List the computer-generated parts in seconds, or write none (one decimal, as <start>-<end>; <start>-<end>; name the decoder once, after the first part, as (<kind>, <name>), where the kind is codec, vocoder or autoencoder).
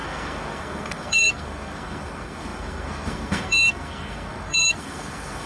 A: 0.0-5.5 (codec, SNAC)